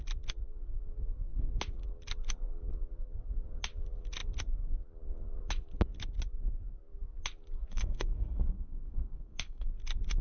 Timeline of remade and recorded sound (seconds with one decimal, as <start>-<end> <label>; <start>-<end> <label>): 0.0-7.7 recorded; 7.7-9.7 remade; 9.7-10.2 recorded